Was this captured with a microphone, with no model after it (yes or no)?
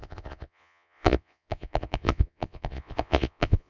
no